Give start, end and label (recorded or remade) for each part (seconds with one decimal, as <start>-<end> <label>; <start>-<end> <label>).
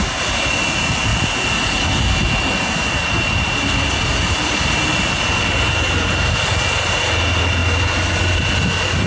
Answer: 0.0-9.1 recorded